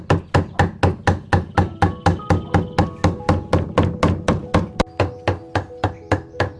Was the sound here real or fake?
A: real